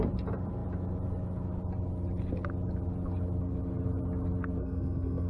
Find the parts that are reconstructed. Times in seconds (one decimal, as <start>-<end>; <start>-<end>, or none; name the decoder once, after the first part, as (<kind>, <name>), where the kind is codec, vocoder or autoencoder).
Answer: 4.6-5.3 (codec, SNAC)